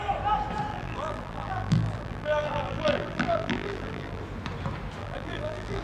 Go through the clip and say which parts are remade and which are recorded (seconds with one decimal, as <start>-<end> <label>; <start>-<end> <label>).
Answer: 0.0-0.7 recorded; 0.7-4.2 remade; 4.2-5.0 recorded; 5.0-5.8 remade